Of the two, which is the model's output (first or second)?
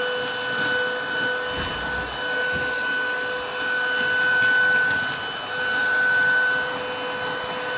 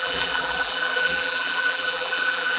second